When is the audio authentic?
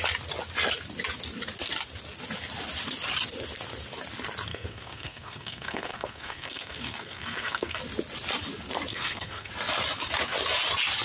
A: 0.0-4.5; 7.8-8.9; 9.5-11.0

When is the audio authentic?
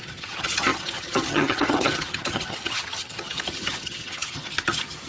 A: none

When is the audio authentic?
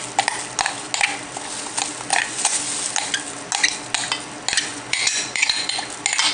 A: 0.0-2.1; 2.6-4.7; 5.8-6.3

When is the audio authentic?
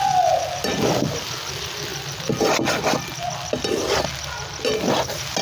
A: 0.0-5.4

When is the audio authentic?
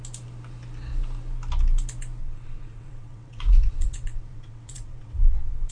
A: 0.0-2.2